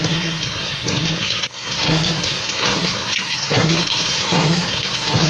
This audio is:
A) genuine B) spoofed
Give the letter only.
B